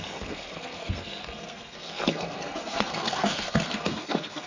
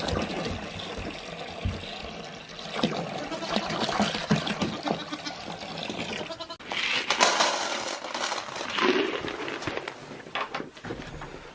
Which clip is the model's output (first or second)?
first